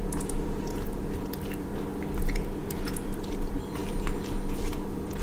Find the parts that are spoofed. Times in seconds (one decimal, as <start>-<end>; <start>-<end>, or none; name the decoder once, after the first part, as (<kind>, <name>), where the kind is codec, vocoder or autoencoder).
0.0-1.7 (vocoder, Vocos); 2.2-3.8; 4.4-5.2